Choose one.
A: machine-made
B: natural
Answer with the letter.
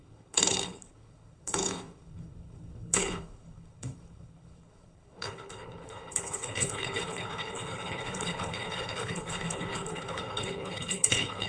A